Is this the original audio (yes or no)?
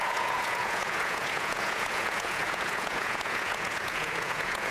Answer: no